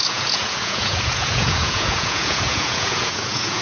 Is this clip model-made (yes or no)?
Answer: yes